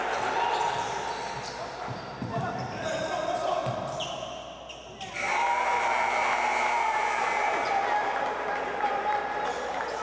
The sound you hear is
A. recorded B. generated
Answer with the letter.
A